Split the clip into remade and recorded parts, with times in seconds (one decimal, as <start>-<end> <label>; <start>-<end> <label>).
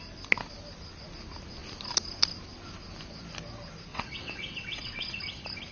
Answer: 0.0-3.9 recorded; 3.9-5.2 remade; 5.2-5.7 recorded